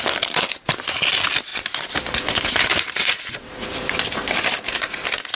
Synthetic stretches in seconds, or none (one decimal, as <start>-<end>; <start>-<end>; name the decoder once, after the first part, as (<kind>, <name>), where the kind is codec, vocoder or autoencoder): 0.0-1.5 (vocoder, BigVGAN v2); 4.7-5.3

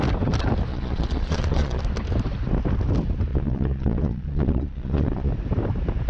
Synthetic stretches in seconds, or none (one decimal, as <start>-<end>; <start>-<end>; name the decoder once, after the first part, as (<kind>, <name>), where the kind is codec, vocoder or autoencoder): 0.7-1.8 (vocoder, Vocos); 3.3-5.3

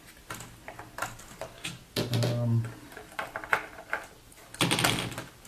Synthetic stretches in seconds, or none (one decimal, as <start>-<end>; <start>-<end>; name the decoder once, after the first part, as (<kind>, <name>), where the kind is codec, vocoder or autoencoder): none

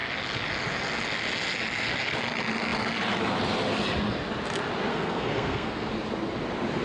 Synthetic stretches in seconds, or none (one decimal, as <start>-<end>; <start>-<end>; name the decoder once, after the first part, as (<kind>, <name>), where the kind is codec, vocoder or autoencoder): 4.9-5.9 (codec, SNAC)